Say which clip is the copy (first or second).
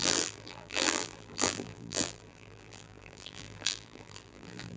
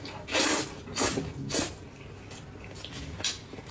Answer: first